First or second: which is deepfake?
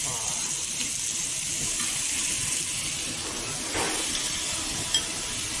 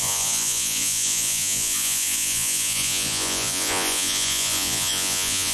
second